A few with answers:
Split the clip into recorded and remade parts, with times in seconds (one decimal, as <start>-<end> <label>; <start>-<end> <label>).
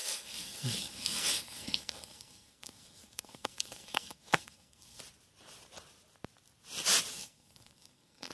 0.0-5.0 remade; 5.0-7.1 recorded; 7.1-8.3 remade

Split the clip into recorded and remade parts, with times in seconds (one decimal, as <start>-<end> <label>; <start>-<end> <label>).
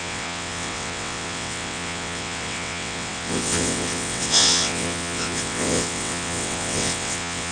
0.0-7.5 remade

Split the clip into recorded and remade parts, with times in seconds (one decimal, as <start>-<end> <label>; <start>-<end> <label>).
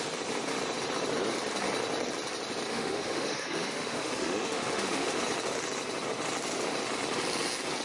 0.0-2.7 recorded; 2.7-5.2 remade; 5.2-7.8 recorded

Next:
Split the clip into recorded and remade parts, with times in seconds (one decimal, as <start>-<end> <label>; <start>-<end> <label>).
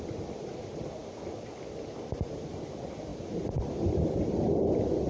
0.0-1.0 remade; 1.0-2.5 recorded; 2.5-5.1 remade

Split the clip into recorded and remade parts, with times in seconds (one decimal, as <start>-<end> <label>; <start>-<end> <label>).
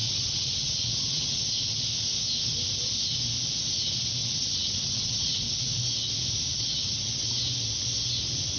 0.0-1.4 remade; 1.4-4.2 recorded; 4.2-5.7 remade; 5.7-6.5 recorded; 6.5-7.3 remade; 7.3-8.6 recorded